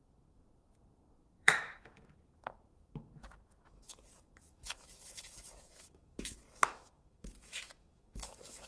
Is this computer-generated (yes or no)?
yes